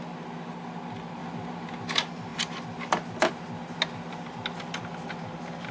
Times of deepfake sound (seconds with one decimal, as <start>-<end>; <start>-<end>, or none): none